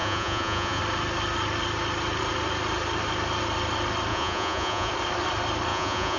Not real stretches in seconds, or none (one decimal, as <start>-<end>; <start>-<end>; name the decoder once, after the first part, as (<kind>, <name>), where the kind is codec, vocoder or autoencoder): 0.0-0.8 (vocoder, Vocos); 4.1-4.9; 5.7-6.2